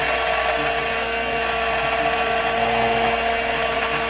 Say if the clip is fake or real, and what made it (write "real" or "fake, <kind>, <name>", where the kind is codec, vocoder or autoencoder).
real